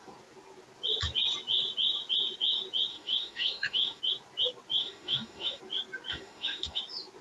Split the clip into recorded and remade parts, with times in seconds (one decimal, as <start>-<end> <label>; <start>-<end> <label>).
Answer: 0.0-2.9 recorded; 2.9-4.0 remade; 4.0-4.8 recorded; 4.8-5.6 remade; 5.6-6.1 recorded; 6.1-6.8 remade; 6.8-7.2 recorded